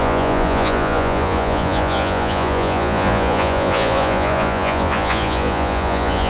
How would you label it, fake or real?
fake